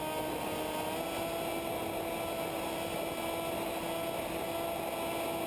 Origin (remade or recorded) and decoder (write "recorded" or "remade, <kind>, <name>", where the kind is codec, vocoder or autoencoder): recorded